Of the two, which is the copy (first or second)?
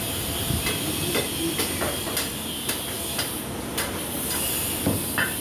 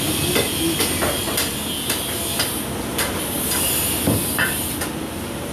first